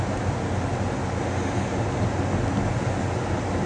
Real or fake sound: real